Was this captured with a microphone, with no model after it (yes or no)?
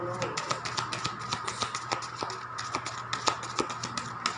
yes